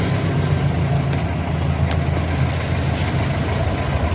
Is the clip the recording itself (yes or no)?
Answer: yes